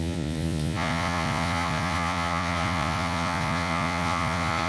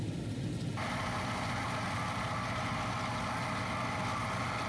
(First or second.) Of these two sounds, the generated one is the first